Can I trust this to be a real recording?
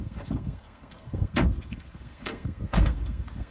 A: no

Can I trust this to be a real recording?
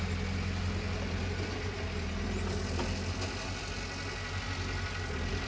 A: yes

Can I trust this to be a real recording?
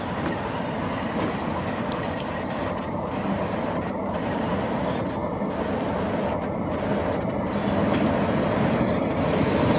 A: yes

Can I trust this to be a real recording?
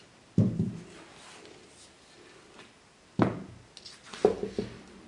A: yes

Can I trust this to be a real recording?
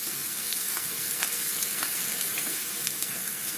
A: no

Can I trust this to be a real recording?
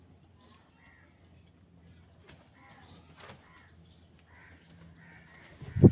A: yes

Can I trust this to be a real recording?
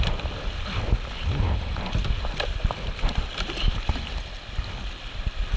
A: yes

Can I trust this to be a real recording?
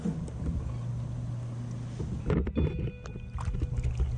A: yes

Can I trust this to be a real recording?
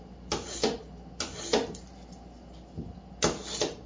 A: yes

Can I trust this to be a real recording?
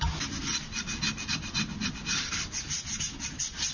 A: yes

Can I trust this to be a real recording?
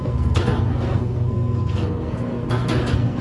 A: no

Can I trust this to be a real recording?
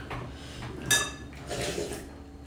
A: yes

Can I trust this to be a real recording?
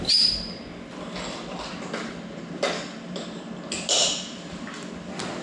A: yes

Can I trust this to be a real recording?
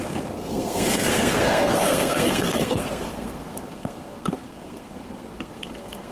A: no